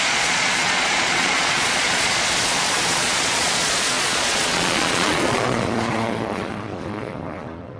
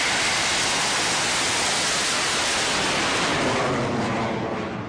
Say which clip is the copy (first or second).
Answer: first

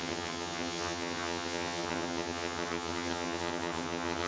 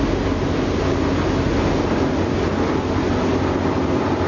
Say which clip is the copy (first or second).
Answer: first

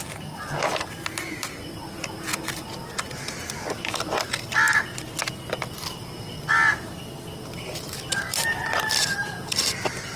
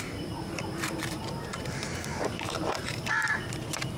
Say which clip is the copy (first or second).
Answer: second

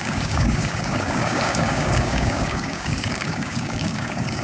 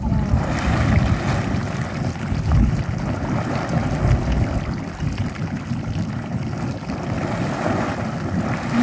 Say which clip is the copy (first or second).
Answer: first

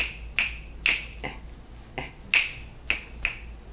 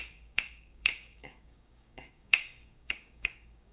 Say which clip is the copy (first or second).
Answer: second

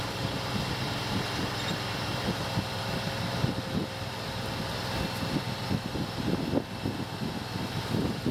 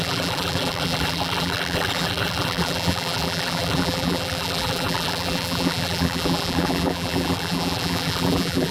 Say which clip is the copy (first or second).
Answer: second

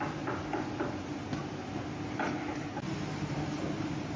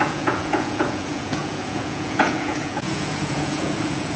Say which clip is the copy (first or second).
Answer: second